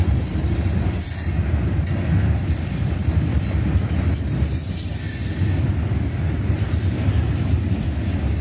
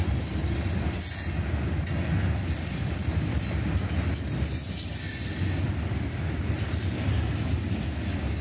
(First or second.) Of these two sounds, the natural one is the second